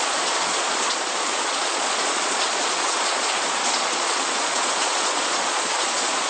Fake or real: fake